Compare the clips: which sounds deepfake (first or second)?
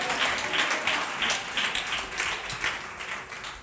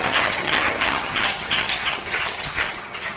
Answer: second